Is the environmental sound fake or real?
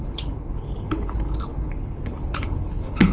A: fake